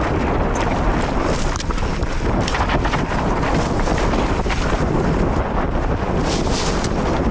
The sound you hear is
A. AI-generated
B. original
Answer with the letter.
B